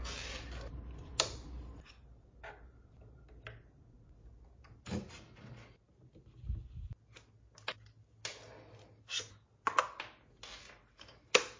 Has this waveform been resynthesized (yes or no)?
no